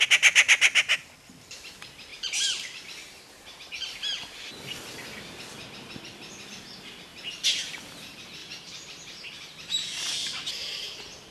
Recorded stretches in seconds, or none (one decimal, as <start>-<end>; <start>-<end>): 0.0-2.1; 3.2-8.4; 10.0-11.3

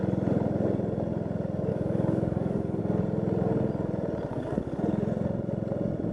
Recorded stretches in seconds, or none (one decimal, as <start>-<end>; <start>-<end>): 0.0-1.7; 2.8-4.3; 4.8-6.1